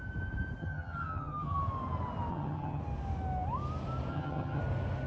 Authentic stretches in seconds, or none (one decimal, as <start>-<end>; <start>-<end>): 0.0-0.6; 1.6-2.3; 2.8-4.1; 4.6-5.1